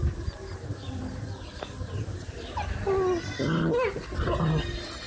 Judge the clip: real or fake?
real